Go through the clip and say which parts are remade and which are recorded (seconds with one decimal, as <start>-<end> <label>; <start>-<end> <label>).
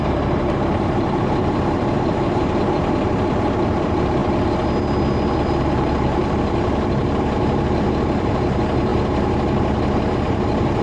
0.0-4.2 remade; 4.2-5.6 recorded; 5.6-6.2 remade; 6.2-6.9 recorded; 6.9-10.8 remade